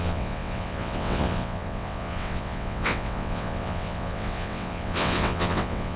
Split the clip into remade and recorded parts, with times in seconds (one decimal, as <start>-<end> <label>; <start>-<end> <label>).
0.0-6.0 remade